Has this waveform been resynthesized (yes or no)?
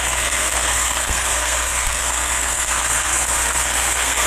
yes